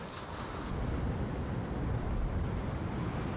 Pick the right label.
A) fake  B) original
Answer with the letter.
B